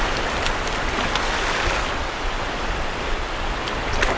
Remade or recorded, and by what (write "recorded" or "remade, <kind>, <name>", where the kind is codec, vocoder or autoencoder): recorded